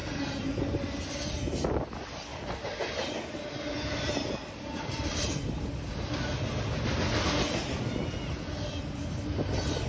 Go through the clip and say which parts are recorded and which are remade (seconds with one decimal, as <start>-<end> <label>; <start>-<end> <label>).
0.0-9.9 recorded